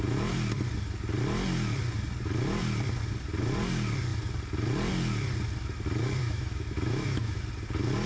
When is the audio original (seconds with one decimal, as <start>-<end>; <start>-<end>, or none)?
0.0-6.2; 7.4-8.1